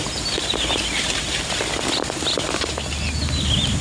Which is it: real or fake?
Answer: real